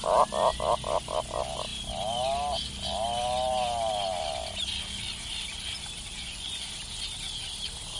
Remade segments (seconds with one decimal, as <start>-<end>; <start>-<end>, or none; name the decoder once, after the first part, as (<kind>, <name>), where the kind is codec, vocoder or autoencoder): 6.2-6.7 (vocoder, Vocos)